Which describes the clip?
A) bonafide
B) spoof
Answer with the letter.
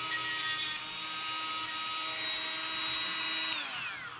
A